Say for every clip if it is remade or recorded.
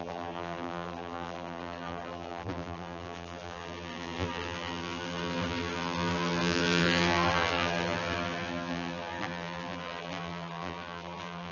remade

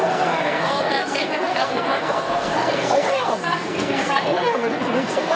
remade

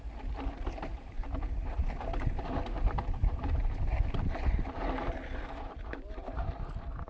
remade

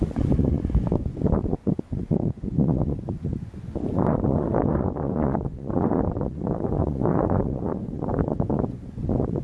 remade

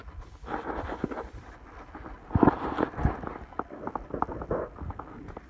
recorded